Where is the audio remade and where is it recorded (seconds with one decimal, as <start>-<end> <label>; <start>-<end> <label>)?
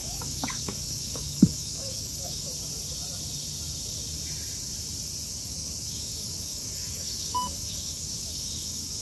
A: 0.0-2.5 remade; 2.5-5.3 recorded; 5.3-9.0 remade